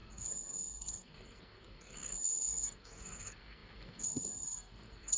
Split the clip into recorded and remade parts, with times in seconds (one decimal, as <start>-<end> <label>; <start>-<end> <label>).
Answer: 0.0-5.2 remade